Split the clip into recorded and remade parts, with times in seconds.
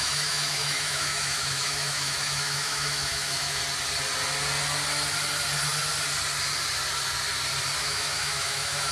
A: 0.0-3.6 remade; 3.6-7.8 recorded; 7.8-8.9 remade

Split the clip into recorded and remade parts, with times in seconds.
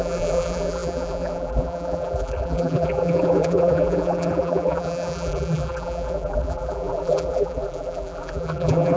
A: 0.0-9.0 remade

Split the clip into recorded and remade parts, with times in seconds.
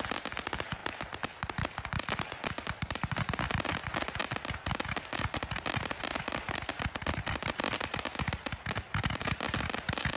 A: 0.0-7.1 recorded; 7.1-8.0 remade; 8.0-10.2 recorded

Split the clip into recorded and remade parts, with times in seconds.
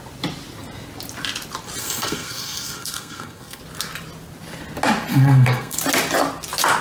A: 0.0-1.8 recorded; 1.8-3.6 remade; 3.6-5.1 recorded; 5.1-5.8 remade; 5.8-6.8 recorded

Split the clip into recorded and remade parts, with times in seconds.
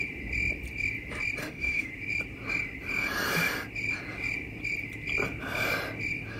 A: 0.0-1.4 recorded; 1.4-1.9 remade; 1.9-6.4 recorded